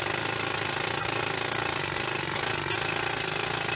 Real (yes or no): yes